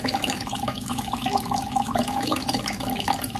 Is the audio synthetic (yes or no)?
yes